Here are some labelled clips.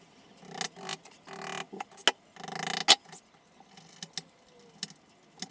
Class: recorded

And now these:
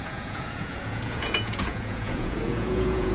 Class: remade